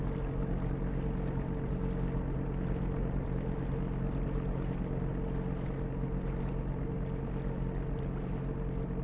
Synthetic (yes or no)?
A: no